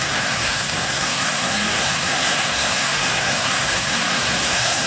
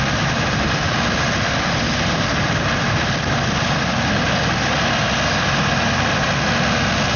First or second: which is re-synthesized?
first